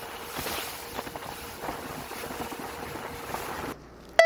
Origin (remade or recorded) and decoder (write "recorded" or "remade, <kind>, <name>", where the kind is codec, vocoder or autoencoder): recorded